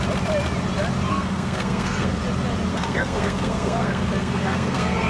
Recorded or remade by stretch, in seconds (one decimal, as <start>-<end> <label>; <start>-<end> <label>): 0.0-1.1 recorded; 1.1-2.2 remade; 2.2-2.7 recorded; 2.7-5.1 remade